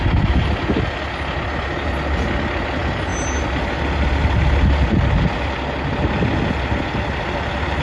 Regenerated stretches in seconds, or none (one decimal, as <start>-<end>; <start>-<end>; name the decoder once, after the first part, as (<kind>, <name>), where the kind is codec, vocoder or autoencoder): none

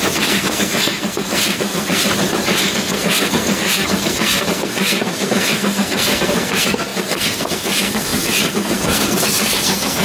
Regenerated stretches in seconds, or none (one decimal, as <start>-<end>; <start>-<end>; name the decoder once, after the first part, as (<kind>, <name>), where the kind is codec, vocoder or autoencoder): 0.0-2.0 (codec, SNAC); 2.6-10.0

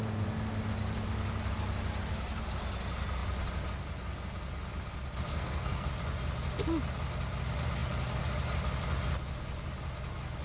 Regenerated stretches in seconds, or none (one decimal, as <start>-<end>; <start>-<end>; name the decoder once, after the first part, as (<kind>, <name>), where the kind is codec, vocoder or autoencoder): 5.3-5.9 (codec, SNAC)

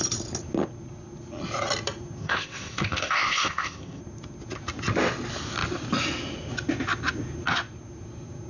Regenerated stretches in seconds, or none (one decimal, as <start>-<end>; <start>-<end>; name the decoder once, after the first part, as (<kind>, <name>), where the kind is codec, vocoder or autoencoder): 2.2-4.0 (codec, ZipCodec)

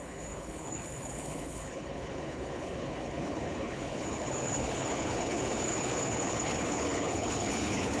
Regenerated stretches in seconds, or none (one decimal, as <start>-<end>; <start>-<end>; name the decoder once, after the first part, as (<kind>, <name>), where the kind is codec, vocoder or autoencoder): 0.0-8.0 (codec, HILCodec)

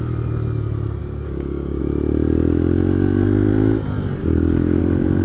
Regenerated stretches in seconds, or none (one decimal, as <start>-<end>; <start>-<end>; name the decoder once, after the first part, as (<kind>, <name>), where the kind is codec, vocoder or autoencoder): 1.0-1.8 (codec, DAC); 4.2-4.8

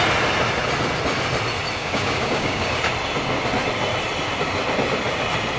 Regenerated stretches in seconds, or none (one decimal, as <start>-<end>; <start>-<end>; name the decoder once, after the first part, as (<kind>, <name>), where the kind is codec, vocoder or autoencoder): 1.8-2.8 (codec, DAC)

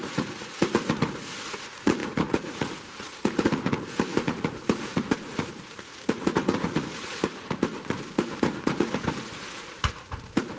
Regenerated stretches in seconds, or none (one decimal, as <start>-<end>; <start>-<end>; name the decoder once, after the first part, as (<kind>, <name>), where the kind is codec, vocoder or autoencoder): 0.0-10.6 (vocoder, Vocos)